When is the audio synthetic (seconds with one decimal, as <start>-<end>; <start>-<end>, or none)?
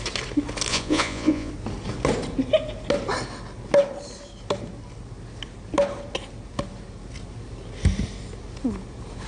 0.7-1.5